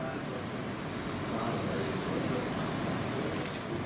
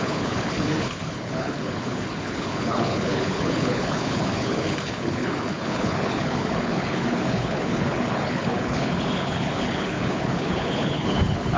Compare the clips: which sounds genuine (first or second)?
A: first